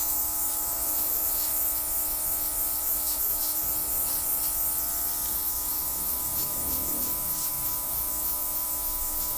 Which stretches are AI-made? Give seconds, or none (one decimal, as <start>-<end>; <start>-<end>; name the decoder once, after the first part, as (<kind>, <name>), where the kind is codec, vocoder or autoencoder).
0.0-1.5 (autoencoder, DAC-VAE); 2.8-3.6; 5.3-9.4